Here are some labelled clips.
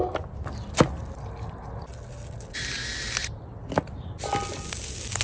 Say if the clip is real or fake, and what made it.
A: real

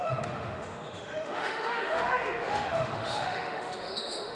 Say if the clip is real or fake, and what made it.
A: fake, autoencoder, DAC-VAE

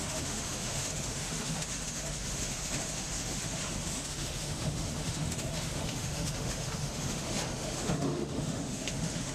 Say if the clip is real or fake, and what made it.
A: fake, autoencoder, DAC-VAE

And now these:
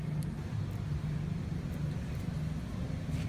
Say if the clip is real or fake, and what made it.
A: real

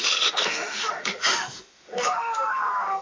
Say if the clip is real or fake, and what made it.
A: fake, autoencoder, DAC-VAE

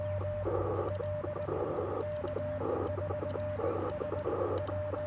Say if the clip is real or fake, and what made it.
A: real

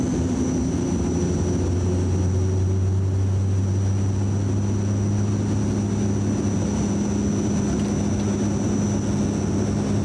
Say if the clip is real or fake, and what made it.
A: real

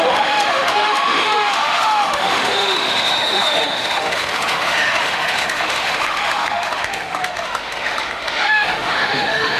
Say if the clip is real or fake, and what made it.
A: fake, autoencoder, DAC-VAE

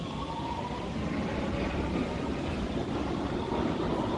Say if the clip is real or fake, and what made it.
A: real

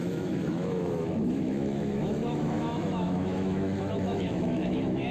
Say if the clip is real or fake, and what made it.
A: fake, autoencoder, DAC-VAE